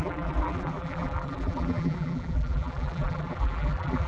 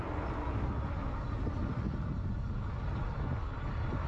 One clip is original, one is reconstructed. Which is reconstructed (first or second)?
first